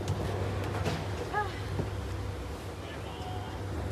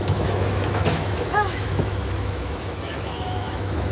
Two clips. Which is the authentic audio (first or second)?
first